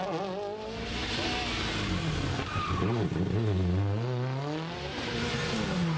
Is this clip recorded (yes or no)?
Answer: yes